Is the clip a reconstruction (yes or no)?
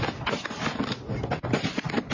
no